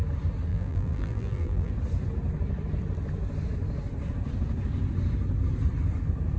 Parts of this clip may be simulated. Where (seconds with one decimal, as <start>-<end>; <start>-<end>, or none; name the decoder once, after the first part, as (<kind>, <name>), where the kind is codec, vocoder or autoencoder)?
0.5-1.7 (vocoder, BigVGAN v2)